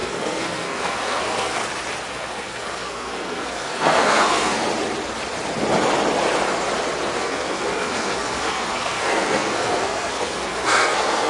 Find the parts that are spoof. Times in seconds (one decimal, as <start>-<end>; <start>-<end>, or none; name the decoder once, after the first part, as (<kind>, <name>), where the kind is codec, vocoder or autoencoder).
0.0-1.6 (codec, SNAC); 2.1-4.7; 7.2-11.3